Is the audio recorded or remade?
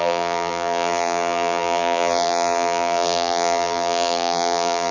remade